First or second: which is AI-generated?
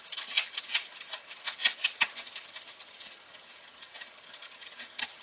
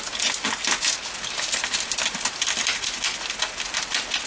first